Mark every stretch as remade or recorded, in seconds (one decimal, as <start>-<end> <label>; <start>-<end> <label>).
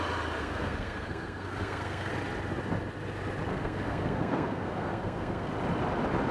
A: 0.0-0.4 recorded; 0.4-2.1 remade; 2.1-3.5 recorded; 3.5-5.5 remade; 5.5-6.3 recorded